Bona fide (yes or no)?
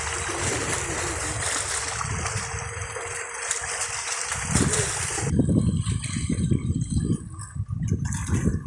yes